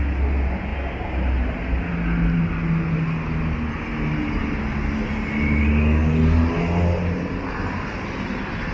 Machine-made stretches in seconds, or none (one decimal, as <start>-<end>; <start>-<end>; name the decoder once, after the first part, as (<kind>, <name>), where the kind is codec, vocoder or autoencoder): none